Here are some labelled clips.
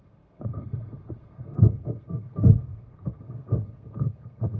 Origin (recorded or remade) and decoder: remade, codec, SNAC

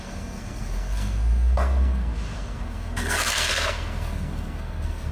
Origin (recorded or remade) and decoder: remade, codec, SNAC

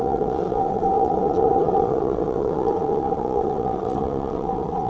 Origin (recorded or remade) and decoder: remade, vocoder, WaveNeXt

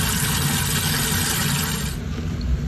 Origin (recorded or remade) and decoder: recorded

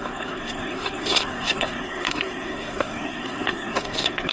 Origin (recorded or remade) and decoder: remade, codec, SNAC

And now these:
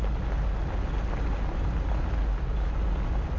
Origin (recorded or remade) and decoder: recorded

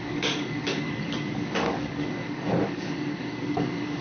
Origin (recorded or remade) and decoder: remade, codec, DAC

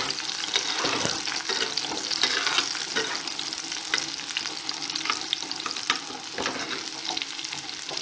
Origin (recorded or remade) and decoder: recorded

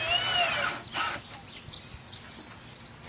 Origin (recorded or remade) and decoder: recorded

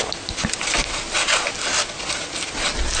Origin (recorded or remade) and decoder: recorded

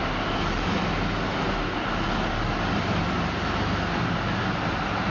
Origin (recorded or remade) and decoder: recorded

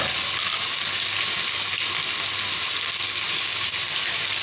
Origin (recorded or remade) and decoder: recorded